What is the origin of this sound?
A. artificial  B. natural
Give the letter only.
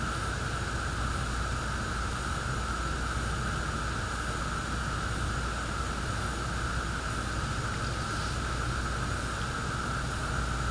B